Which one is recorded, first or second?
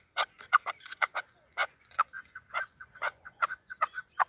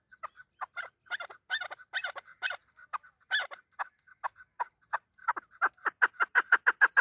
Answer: second